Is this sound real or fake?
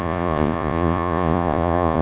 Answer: fake